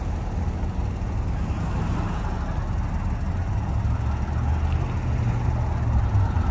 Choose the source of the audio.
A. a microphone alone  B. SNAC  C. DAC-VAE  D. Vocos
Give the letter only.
A